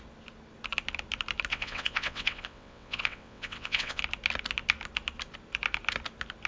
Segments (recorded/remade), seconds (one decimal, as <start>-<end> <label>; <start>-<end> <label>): 0.0-1.5 recorded; 1.5-4.0 remade; 4.0-6.5 recorded